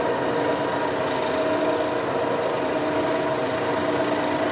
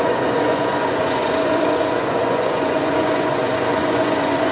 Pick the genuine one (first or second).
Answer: first